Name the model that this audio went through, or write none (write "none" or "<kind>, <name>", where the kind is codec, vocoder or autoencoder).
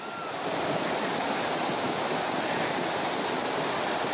none